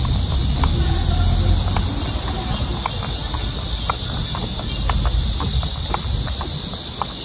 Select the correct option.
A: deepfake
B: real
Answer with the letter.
B